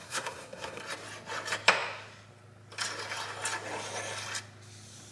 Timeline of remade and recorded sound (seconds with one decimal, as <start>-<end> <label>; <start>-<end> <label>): 0.0-0.8 remade; 0.8-5.1 recorded